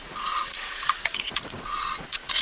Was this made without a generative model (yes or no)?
no